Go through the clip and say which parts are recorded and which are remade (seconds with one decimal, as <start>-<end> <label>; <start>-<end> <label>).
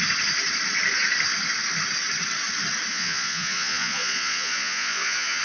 0.0-2.9 recorded; 2.9-5.4 remade